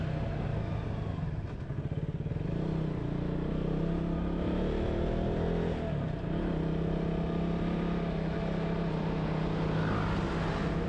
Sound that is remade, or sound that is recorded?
recorded